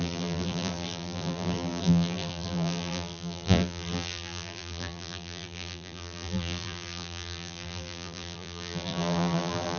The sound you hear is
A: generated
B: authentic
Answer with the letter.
A